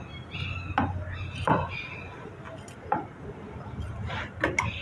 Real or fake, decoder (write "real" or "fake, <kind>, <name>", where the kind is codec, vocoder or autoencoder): real